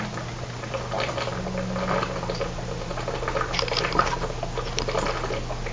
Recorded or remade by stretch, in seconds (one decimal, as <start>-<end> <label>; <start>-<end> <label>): 0.0-5.7 recorded